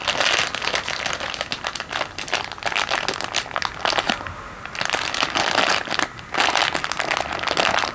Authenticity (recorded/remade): recorded